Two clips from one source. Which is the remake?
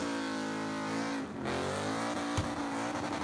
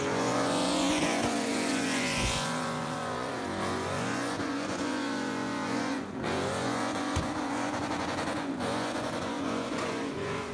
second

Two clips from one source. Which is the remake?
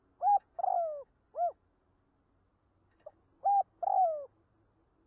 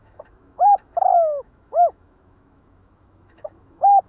second